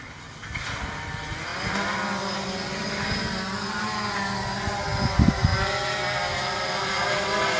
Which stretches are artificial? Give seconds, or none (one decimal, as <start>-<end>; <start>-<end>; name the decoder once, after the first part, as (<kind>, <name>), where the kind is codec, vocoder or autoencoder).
none